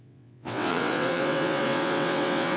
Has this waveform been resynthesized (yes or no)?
yes